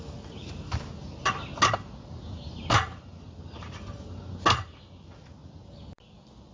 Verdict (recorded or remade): recorded